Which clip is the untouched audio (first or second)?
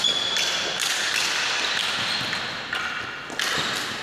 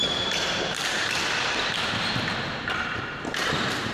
first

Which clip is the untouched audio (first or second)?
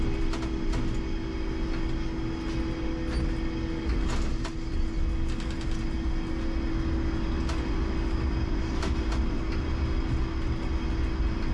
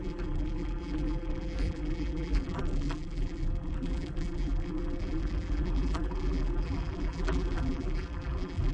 first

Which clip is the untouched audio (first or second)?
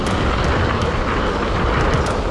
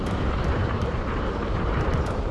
first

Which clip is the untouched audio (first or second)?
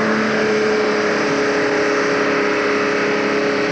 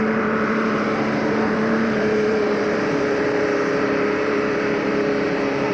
first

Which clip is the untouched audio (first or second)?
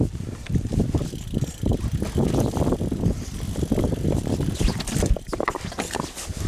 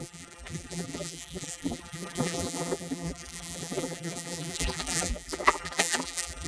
first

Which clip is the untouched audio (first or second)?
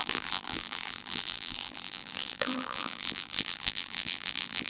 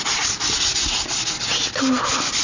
second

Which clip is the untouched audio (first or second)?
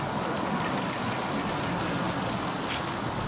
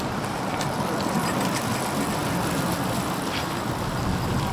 first